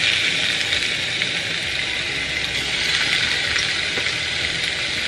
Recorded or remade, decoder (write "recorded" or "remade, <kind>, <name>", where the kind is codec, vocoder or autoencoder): recorded